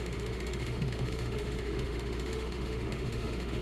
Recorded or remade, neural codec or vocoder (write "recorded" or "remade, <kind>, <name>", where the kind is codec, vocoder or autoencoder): remade, autoencoder, DAC-VAE